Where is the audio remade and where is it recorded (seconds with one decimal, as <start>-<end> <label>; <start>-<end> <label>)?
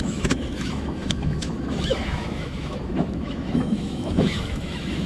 0.0-5.1 remade